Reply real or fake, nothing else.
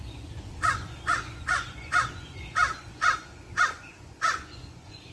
fake